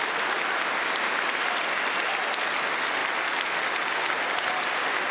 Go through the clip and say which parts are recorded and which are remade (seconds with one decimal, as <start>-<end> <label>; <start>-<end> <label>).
0.0-5.1 recorded